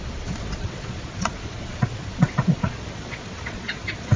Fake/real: fake